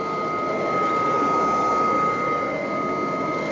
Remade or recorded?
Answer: recorded